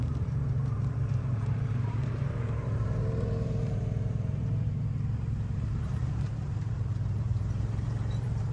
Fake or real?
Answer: fake